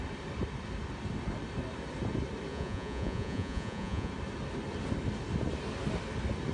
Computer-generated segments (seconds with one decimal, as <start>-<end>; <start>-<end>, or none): 2.5-4.1